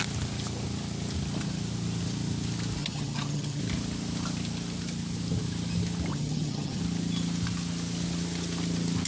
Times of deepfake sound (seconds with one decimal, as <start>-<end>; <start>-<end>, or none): 2.8-3.6; 6.1-6.8